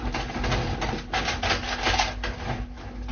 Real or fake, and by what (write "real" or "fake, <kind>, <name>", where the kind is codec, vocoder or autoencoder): real